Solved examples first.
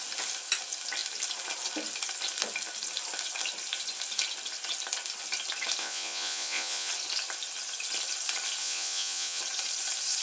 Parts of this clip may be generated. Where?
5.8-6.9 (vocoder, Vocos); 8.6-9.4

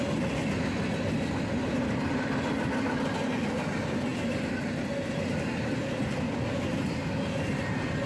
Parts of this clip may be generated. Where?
none

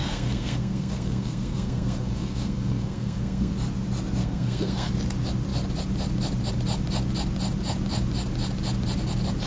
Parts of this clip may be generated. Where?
0.0-3.5 (codec, SNAC); 4.2-4.9

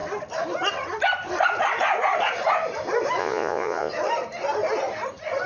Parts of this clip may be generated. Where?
3.2-3.9 (vocoder, Vocos)

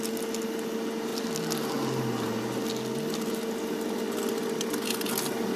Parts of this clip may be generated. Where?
none

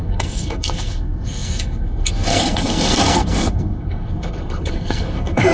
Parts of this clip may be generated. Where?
0.0-5.5 (codec, SNAC)